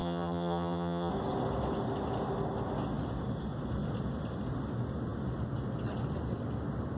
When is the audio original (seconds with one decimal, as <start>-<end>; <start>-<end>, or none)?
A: 1.1-7.0